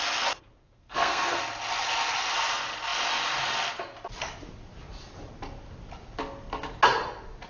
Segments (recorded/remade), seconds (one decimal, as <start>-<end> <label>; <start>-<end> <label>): 0.0-0.6 recorded; 0.6-1.4 remade; 1.4-7.5 recorded